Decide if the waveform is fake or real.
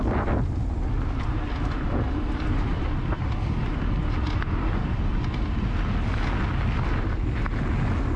real